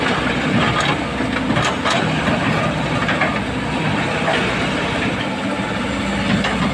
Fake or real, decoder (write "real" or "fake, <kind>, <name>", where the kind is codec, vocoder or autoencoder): real